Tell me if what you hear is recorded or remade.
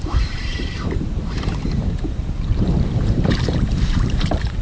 remade